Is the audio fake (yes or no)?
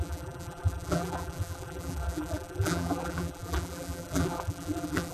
yes